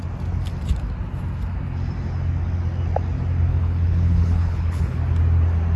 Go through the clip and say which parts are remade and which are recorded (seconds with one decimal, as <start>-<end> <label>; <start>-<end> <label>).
0.0-3.5 recorded; 3.5-5.0 remade; 5.0-5.8 recorded